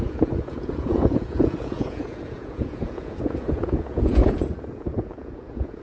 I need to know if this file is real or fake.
fake